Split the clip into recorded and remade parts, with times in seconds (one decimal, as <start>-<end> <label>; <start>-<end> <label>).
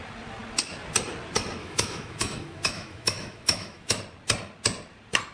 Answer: 0.0-1.6 recorded; 1.6-4.0 remade; 4.0-5.3 recorded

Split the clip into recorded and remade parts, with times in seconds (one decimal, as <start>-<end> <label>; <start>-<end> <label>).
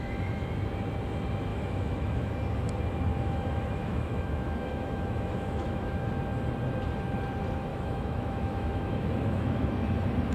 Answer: 0.0-1.5 recorded; 1.5-2.3 remade; 2.3-3.1 recorded; 3.1-6.1 remade; 6.1-7.7 recorded; 7.7-9.7 remade; 9.7-10.3 recorded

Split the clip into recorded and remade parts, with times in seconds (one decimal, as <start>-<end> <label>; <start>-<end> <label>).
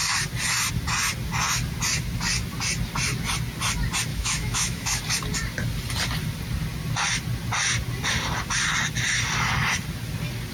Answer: 0.0-4.1 recorded; 4.1-5.0 remade; 5.0-10.5 recorded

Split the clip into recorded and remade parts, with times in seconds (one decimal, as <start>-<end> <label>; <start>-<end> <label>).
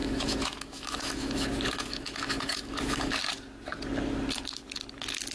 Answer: 0.0-3.2 remade; 3.2-5.3 recorded